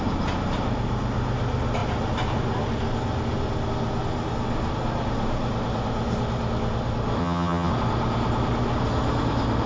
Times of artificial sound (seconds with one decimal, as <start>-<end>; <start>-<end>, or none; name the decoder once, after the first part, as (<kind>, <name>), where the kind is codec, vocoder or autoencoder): 7.2-7.7 (vocoder, HiFi-GAN)